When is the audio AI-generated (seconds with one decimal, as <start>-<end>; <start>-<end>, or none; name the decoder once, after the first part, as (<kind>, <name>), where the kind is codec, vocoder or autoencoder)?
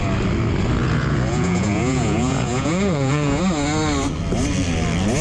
0.8-3.4 (vocoder, Vocos)